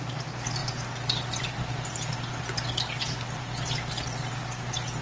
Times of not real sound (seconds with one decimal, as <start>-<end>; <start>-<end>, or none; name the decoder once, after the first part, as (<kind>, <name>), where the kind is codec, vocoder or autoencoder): none